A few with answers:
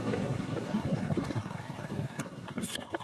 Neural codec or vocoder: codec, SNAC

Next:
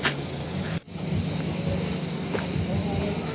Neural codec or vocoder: none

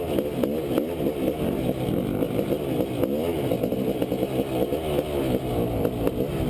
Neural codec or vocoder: none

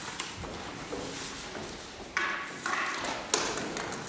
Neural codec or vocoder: none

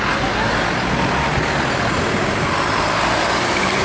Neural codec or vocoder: none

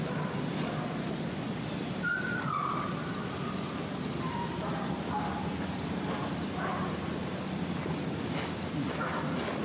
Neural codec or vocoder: none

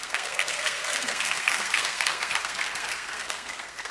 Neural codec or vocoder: codec, SNAC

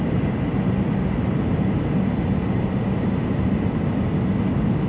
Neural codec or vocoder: none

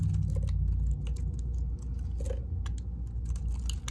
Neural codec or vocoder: none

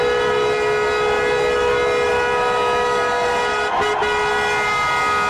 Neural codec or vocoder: none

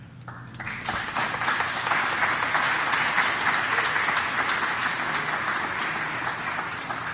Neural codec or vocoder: none